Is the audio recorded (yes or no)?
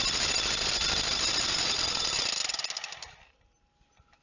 yes